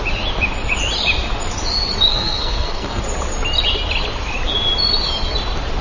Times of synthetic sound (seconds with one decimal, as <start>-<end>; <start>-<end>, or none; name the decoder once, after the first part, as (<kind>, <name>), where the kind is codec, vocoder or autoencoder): 2.1-3.0 (codec, SNAC)